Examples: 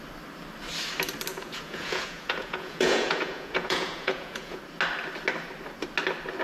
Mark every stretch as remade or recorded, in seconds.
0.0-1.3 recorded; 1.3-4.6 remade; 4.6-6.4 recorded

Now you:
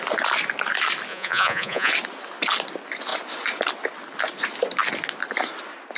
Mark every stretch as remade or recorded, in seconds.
0.0-1.1 recorded; 1.1-1.9 remade; 1.9-6.0 recorded

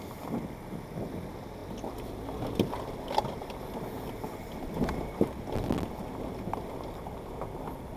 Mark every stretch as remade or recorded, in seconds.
0.0-8.0 recorded

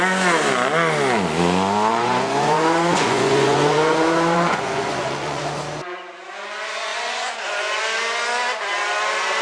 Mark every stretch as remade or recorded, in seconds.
0.0-1.9 recorded; 1.9-5.4 remade; 5.4-6.9 recorded; 6.9-7.8 remade; 7.8-9.4 recorded